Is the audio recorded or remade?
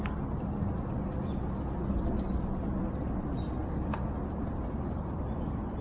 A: recorded